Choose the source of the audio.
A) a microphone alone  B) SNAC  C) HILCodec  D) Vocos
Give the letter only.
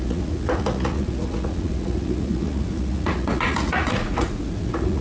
D